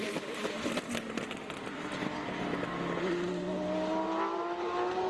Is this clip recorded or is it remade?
recorded